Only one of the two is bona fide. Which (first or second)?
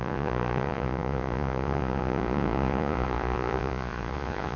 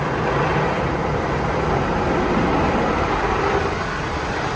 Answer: second